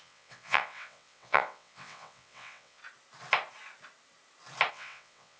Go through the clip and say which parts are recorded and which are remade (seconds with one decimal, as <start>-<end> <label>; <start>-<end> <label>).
0.0-2.8 remade; 2.8-4.7 recorded; 4.7-5.4 remade